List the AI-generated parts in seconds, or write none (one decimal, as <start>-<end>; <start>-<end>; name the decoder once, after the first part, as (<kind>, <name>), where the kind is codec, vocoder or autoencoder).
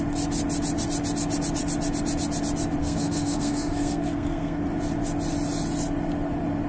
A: 2.8-4.6 (codec, SNAC)